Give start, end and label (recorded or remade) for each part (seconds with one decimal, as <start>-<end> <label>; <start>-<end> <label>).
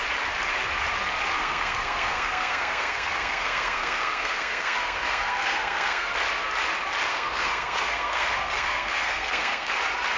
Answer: 0.0-1.3 recorded; 1.3-6.1 remade; 6.1-7.1 recorded; 7.1-9.7 remade; 9.7-10.2 recorded